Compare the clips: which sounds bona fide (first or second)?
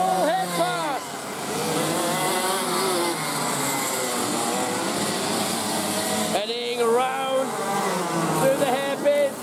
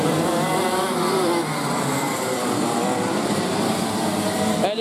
first